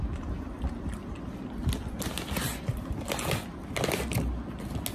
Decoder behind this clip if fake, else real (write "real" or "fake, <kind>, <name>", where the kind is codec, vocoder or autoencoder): real